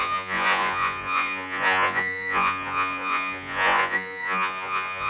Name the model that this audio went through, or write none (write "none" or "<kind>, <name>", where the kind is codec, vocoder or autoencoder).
vocoder, Vocos